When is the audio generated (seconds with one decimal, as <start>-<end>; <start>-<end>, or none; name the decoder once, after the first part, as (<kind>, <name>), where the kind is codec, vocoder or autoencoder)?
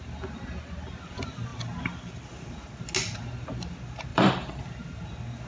4.1-4.6 (vocoder, BigVGAN v2)